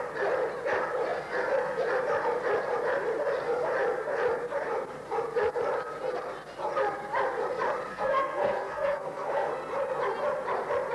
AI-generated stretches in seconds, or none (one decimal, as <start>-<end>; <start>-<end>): 7.9-9.5